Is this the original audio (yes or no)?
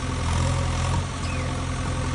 yes